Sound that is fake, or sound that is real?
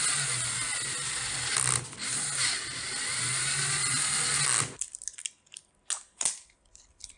real